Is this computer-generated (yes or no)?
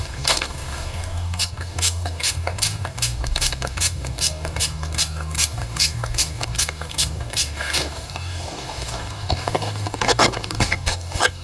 yes